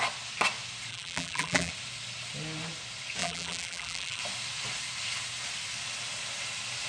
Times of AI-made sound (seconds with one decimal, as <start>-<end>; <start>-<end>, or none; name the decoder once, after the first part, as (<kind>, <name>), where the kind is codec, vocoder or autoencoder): 0.9-1.7 (vocoder, BigVGAN v2); 3.2-4.2